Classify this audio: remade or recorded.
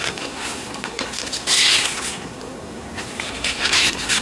remade